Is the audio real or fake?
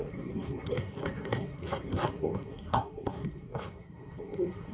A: fake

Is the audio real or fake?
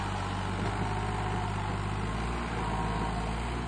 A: real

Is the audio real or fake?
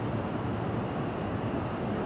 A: real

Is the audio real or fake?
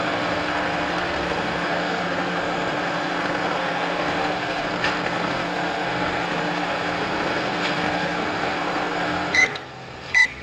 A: fake